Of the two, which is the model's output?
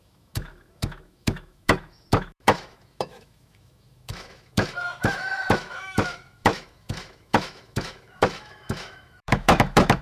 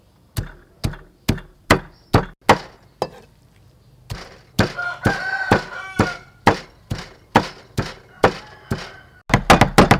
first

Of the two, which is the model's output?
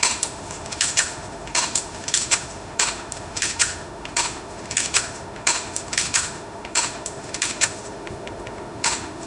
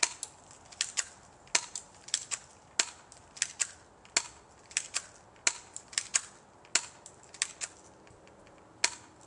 first